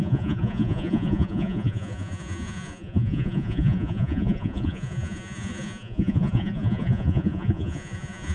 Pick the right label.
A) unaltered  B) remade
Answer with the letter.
B